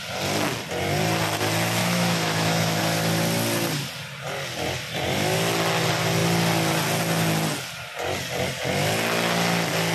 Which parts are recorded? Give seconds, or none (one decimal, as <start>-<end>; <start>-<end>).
0.0-1.8; 2.8-9.9